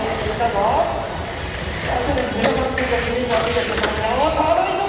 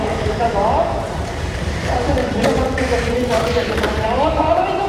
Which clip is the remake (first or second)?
second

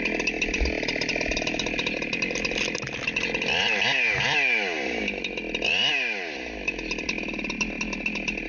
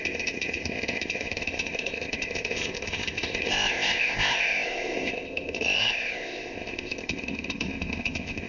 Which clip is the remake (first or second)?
second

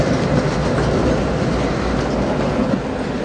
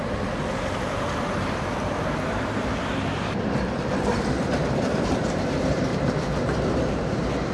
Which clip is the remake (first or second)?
second